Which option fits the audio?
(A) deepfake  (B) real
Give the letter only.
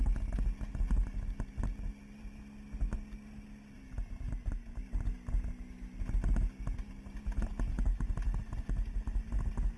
B